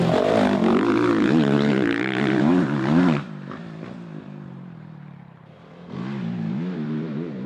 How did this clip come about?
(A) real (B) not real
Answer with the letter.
B